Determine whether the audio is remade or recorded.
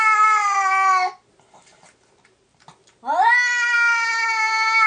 recorded